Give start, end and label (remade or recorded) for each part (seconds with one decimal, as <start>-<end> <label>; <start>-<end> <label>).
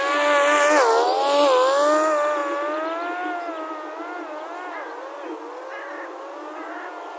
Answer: 0.0-7.2 recorded